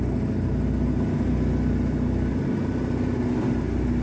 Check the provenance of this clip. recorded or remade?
recorded